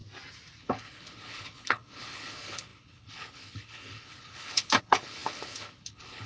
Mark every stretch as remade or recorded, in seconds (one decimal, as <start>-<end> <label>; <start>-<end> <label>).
0.0-0.6 recorded; 0.6-6.3 remade